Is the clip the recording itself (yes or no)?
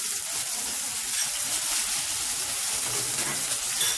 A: yes